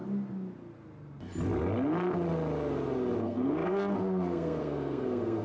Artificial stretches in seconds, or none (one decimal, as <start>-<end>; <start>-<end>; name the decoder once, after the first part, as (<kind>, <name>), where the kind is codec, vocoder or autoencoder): 3.2-5.4 (codec, SNAC)